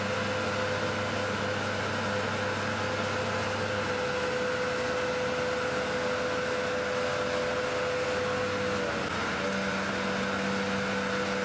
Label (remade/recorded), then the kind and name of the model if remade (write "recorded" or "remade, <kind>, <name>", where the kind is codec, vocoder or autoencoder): recorded